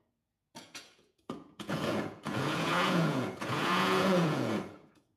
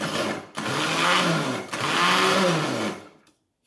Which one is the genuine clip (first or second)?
second